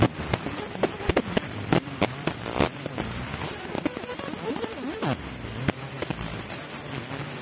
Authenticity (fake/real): fake